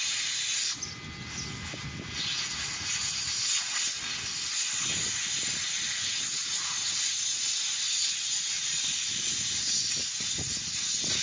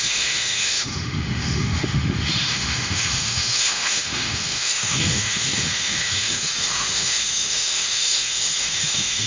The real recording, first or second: first